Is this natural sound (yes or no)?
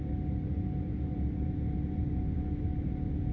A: yes